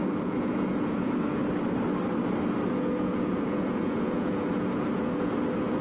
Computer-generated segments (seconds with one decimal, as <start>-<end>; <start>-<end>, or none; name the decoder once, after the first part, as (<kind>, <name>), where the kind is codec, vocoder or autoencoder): 0.0-1.4 (vocoder, Vocos); 2.7-5.8